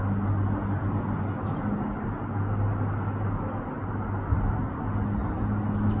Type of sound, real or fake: real